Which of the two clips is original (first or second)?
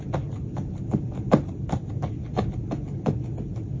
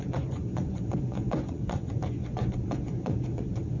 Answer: first